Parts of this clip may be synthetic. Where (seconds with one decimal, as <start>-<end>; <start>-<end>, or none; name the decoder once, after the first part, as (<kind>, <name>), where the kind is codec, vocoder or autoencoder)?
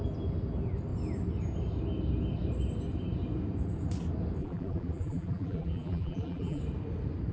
4.4-6.6 (vocoder, BigVGAN v2)